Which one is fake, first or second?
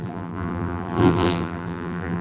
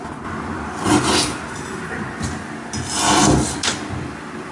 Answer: first